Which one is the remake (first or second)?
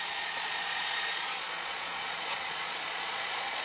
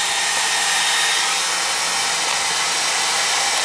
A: first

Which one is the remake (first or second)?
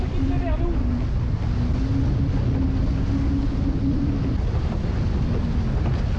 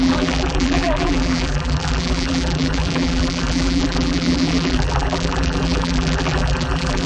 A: second